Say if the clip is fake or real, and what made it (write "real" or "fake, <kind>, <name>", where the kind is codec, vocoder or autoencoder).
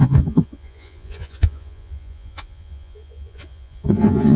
fake, vocoder, Vocos